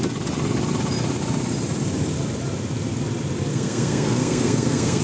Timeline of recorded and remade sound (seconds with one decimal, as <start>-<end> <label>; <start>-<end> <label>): 0.0-3.5 recorded; 3.5-5.0 remade